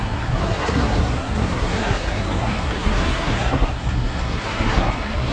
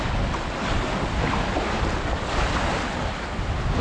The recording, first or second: second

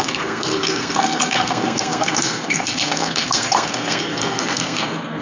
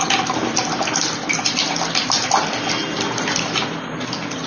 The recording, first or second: second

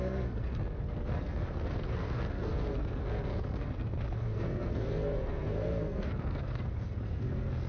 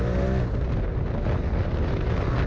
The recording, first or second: second